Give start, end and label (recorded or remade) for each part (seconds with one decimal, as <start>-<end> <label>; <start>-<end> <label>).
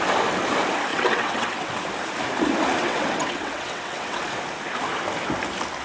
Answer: 0.0-0.9 recorded; 0.9-1.7 remade; 1.7-2.8 recorded; 2.8-4.2 remade; 4.2-5.8 recorded